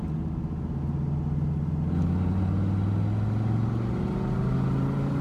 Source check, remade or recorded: recorded